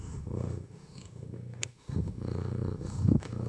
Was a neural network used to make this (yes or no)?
yes